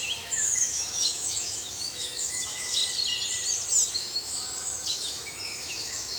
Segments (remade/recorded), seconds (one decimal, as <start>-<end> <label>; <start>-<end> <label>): 0.0-2.8 remade; 2.8-3.9 recorded; 3.9-6.2 remade